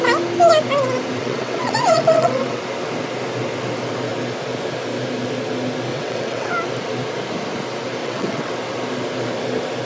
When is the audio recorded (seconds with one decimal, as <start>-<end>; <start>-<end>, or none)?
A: 0.0-1.2; 2.6-5.9; 6.5-8.0; 8.5-9.9